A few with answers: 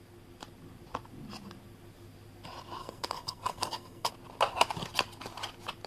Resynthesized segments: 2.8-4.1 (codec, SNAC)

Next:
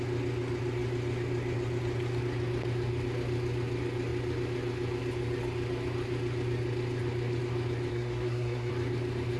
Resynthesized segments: 7.9-8.7 (codec, SNAC)

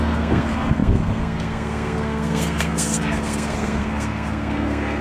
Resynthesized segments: 0.0-5.0 (codec, SNAC)

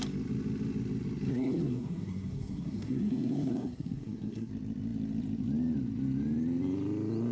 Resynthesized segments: 1.3-4.5 (codec, SNAC)